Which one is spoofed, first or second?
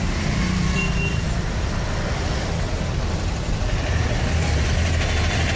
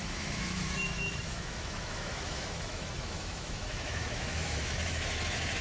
second